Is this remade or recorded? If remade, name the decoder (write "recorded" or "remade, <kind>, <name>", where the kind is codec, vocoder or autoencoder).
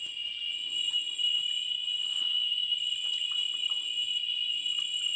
remade, vocoder, Vocos